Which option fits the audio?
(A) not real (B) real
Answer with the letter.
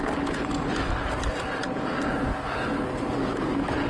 B